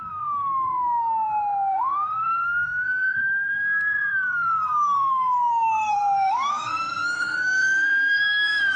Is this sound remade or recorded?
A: remade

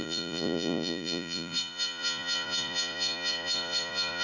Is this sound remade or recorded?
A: remade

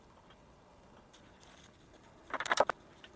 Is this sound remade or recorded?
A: recorded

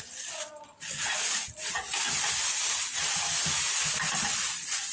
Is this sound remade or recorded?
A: recorded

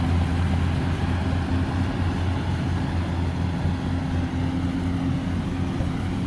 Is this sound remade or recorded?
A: recorded